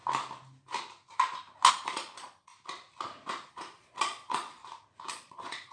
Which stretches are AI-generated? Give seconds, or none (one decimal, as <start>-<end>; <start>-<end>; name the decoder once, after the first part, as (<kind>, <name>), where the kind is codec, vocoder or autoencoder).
1.7-2.5 (vocoder, Vocos); 3.5-4.6; 5.1-5.7